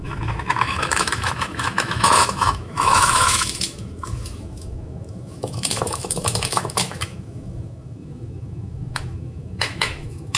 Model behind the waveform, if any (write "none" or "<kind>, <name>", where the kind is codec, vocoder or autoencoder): autoencoder, DAC-VAE